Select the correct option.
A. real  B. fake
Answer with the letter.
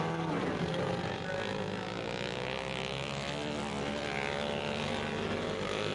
A